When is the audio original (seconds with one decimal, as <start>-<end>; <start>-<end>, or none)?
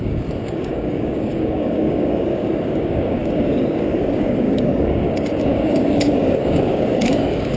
none